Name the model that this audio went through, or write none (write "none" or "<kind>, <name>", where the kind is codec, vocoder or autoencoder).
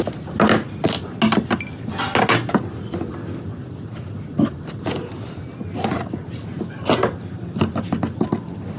none